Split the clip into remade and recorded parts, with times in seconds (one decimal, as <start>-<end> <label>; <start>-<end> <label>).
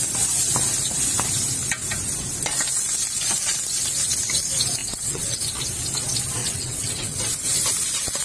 0.0-4.8 recorded; 4.8-5.4 remade; 5.4-6.4 recorded; 6.4-7.2 remade; 7.2-8.2 recorded